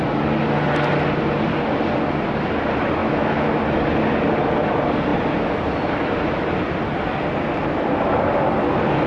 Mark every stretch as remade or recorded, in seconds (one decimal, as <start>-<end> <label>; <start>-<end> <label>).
0.0-3.0 recorded; 3.0-3.6 remade; 3.6-9.1 recorded